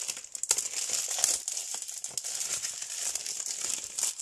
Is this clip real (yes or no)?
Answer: yes